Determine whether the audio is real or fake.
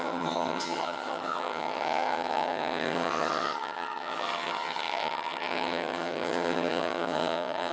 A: fake